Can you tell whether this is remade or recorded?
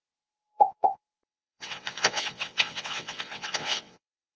remade